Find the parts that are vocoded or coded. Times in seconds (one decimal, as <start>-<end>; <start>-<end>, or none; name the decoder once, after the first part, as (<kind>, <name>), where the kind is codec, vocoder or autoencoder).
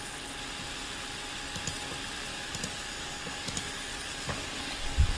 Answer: 2.3-5.2 (codec, DAC)